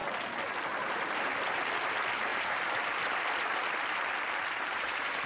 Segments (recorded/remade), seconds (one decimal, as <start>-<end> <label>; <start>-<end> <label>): 0.0-5.3 recorded